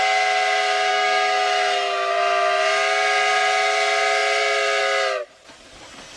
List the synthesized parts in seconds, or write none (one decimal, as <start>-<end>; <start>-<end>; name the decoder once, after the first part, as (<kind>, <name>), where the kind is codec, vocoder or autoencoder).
0.9-2.1 (autoencoder, DAC-VAE)